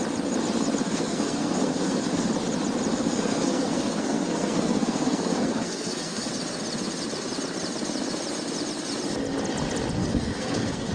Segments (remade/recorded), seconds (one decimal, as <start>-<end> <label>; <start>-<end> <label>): 0.0-0.8 recorded; 0.8-2.3 remade; 2.3-2.9 recorded; 2.9-6.3 remade; 6.3-10.0 recorded; 10.0-10.9 remade